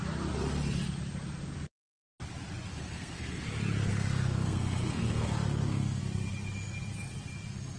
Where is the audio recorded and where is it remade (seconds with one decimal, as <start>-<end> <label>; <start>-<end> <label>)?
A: 0.0-2.7 recorded; 2.7-3.4 remade; 3.4-3.9 recorded; 3.9-6.0 remade; 6.0-7.8 recorded

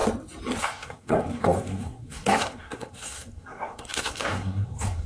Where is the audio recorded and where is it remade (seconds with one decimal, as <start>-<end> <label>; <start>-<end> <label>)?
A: 0.0-0.6 recorded; 0.6-5.1 remade

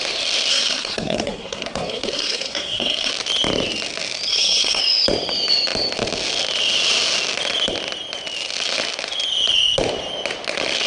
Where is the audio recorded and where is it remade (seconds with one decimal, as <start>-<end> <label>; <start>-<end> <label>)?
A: 0.0-0.5 recorded; 0.5-3.1 remade; 3.1-4.3 recorded; 4.3-4.8 remade; 4.8-10.9 recorded

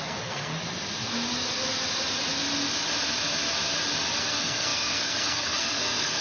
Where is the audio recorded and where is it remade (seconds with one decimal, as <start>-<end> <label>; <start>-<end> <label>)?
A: 0.0-0.5 remade; 0.5-4.2 recorded; 4.2-6.2 remade

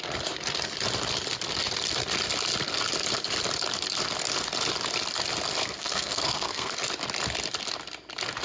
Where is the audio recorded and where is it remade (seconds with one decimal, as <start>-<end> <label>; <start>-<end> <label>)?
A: 0.0-5.6 recorded; 5.6-6.7 remade; 6.7-8.4 recorded

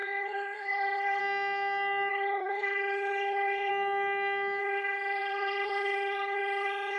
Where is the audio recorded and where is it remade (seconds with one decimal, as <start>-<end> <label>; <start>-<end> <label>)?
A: 0.0-1.2 remade; 1.2-2.1 recorded; 2.1-3.7 remade; 3.7-4.6 recorded; 4.6-7.0 remade

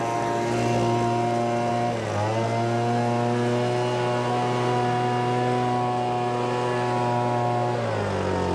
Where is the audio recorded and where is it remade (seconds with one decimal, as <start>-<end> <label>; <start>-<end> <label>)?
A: 0.0-8.5 recorded

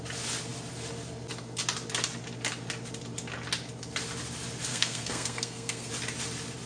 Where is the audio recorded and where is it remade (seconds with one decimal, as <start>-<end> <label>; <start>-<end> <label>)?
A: 0.0-4.7 recorded; 4.7-5.9 remade; 5.9-6.7 recorded